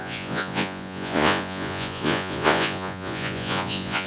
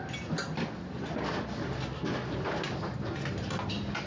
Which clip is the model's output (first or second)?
first